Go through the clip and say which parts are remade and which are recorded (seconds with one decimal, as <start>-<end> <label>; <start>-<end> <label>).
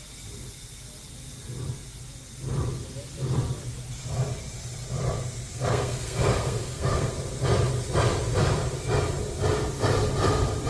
0.0-5.5 recorded; 5.5-7.1 remade; 7.1-10.7 recorded